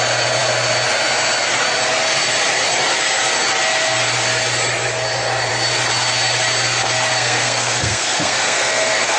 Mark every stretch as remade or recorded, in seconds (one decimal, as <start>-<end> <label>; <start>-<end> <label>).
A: 0.0-7.1 recorded; 7.1-9.2 remade